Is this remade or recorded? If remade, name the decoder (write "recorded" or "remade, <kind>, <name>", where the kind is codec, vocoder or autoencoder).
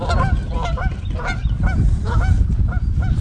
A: recorded